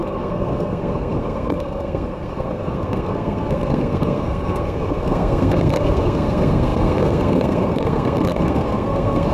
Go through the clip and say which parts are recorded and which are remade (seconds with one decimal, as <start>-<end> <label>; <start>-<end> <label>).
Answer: 0.0-9.3 remade